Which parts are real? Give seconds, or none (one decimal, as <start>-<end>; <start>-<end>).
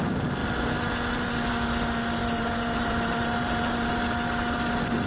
0.0-2.2; 3.9-5.1